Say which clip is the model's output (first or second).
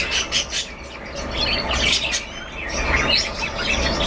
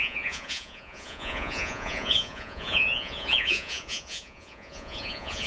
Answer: second